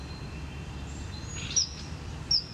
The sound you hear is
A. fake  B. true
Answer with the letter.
B